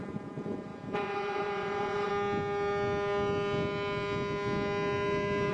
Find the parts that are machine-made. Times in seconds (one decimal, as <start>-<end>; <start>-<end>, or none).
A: 0.0-2.1